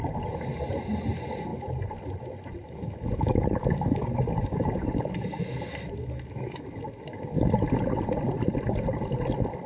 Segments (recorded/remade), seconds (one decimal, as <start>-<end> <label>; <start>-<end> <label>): 0.0-2.6 recorded; 2.6-7.5 remade; 7.5-9.7 recorded